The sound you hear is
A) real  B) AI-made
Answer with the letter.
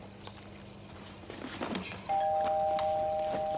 A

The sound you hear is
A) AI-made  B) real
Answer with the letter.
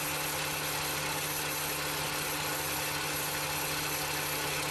B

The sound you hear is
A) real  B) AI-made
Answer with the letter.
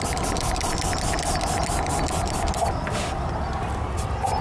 A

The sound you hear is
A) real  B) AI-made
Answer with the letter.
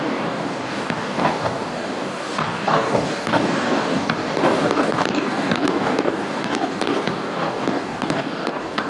B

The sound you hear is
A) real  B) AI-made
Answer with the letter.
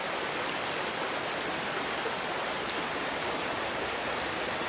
A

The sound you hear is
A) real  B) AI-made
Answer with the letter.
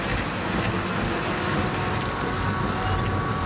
A